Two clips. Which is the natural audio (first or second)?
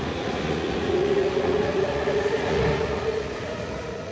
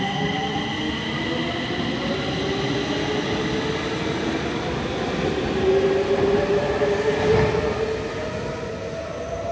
second